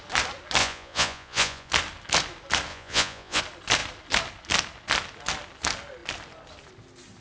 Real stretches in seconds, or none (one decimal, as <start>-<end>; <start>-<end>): 0.0-0.6; 1.7-2.7; 3.4-7.2